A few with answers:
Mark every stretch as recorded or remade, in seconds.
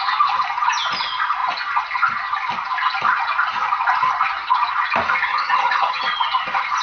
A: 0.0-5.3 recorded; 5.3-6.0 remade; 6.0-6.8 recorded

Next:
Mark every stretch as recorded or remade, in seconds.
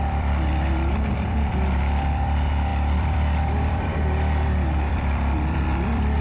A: 0.0-6.2 remade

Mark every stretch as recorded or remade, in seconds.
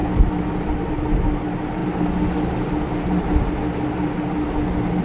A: 0.0-5.0 recorded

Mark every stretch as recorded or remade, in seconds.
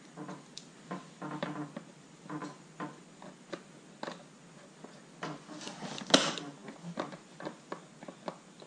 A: 0.0-8.7 recorded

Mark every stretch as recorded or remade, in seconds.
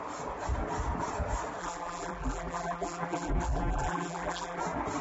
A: 0.0-1.6 recorded; 1.6-4.6 remade; 4.6-5.0 recorded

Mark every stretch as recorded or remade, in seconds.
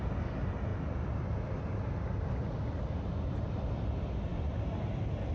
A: 0.0-0.7 recorded; 0.7-1.3 remade; 1.3-4.3 recorded; 4.3-5.3 remade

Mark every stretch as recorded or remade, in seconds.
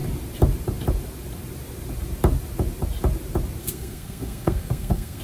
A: 0.0-3.6 recorded; 3.6-5.2 remade